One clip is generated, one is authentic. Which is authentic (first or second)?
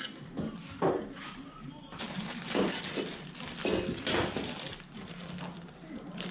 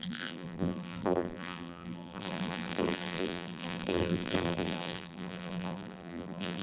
first